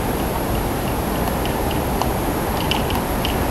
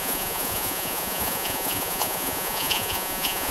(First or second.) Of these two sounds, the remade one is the second